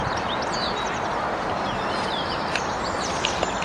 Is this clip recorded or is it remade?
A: recorded